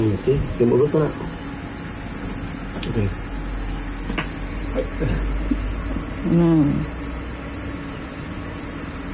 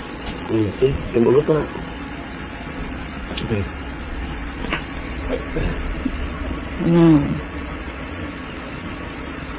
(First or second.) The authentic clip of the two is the first